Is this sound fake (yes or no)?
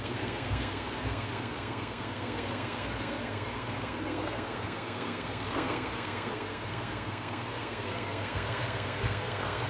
yes